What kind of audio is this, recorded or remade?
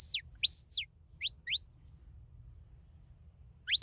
recorded